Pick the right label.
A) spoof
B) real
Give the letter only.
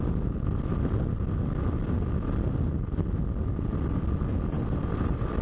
B